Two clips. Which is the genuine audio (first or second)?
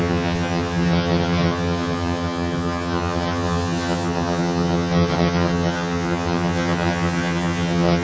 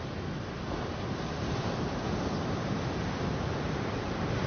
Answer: second